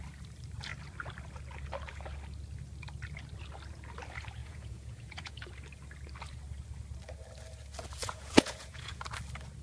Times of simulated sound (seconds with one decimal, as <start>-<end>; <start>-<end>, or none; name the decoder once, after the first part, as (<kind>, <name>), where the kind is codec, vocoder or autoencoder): 4.4-5.5 (vocoder, Vocos); 8.0-9.0